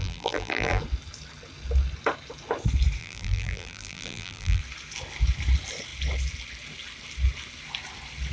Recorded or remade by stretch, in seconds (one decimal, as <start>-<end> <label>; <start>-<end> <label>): 0.0-0.8 remade; 0.8-3.0 recorded; 3.0-4.6 remade; 4.6-8.3 recorded